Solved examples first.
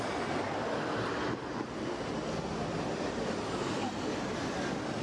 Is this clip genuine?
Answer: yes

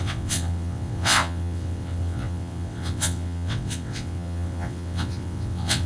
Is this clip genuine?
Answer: no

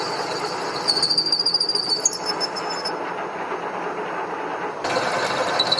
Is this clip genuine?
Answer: yes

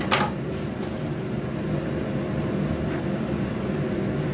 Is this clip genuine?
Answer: yes